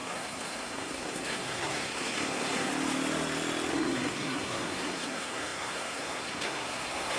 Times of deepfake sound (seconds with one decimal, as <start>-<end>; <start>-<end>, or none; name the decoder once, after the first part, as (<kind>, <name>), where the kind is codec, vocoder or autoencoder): 0.0-2.7 (codec, SNAC); 3.7-7.2